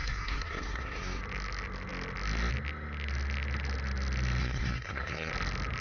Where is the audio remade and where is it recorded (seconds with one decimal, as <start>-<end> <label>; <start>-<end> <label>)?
0.0-1.2 remade; 1.2-4.4 recorded; 4.4-5.3 remade; 5.3-5.8 recorded